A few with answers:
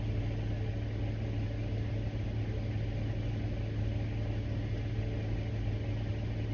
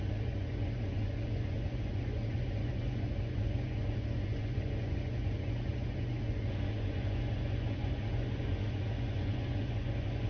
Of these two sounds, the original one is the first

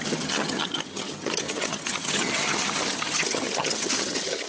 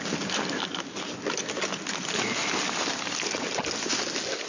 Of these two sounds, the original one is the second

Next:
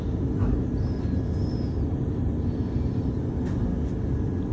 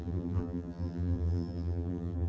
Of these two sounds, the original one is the first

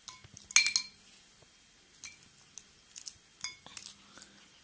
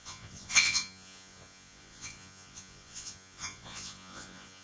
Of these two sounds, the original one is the first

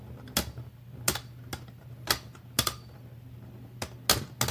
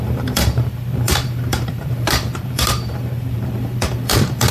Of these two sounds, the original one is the first